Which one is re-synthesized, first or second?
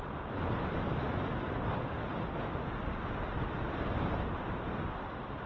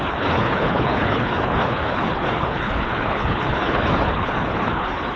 second